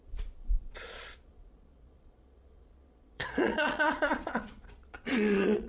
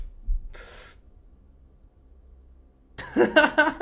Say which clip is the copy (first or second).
first